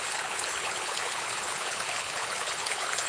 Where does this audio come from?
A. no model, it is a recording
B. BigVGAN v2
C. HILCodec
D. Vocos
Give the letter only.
C